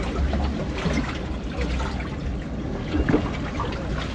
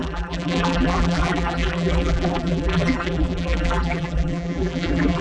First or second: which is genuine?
first